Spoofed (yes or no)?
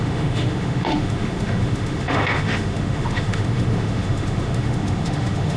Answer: yes